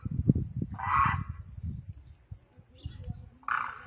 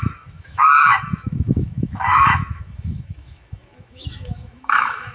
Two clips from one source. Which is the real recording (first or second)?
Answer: first